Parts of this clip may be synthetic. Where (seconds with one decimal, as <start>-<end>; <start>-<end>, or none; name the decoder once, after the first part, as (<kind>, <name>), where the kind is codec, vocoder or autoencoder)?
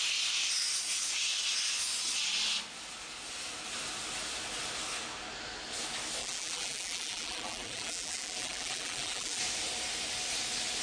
6.2-9.4 (vocoder, BigVGAN v2)